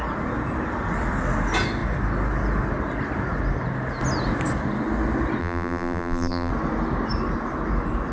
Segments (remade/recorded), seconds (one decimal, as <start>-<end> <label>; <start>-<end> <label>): 0.0-5.4 recorded; 5.4-6.5 remade; 6.5-8.1 recorded